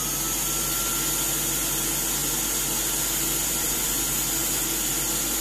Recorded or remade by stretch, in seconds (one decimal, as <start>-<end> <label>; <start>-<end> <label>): 0.0-5.4 recorded